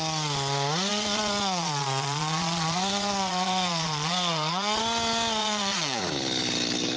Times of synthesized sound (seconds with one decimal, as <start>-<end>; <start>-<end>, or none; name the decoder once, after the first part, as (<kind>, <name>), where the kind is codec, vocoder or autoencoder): 0.9-4.8 (vocoder, Vocos); 5.4-6.0